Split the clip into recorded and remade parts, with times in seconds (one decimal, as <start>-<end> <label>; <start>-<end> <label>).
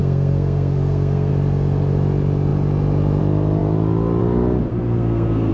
0.0-1.3 remade; 1.3-4.7 recorded; 4.7-5.5 remade